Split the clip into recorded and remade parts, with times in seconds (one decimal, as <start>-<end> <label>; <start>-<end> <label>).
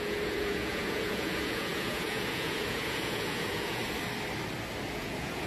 0.0-3.8 remade; 3.8-4.9 recorded; 4.9-5.5 remade